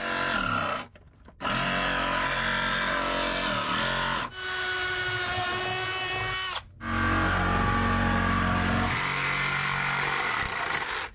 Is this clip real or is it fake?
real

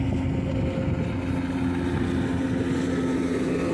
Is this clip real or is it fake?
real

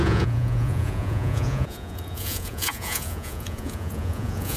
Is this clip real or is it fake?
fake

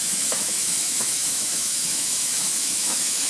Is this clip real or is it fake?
fake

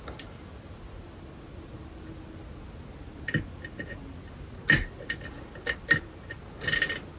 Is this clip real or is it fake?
real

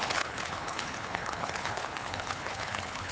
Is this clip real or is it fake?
fake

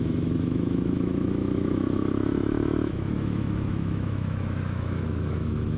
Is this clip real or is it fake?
fake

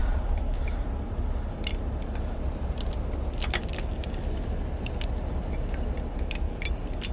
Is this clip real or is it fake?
real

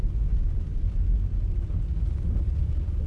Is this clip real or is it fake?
real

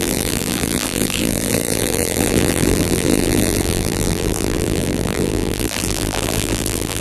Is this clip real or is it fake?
fake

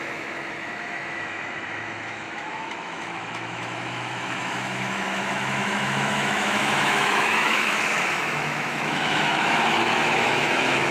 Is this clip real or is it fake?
fake